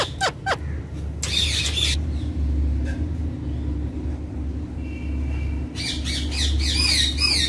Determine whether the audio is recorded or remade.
recorded